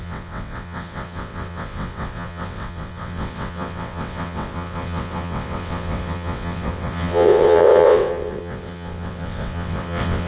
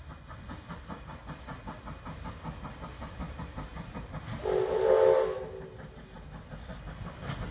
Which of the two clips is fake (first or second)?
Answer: first